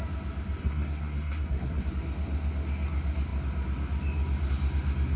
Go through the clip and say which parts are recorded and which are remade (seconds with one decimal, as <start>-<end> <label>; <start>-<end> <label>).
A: 0.0-0.6 recorded; 0.6-1.9 remade; 1.9-5.2 recorded